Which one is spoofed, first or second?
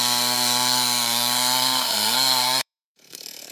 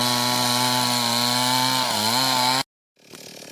first